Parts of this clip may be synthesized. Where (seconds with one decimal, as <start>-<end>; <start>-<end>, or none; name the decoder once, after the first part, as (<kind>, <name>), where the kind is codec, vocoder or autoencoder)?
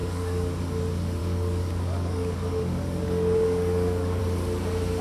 0.0-0.6 (codec, DAC); 1.2-4.2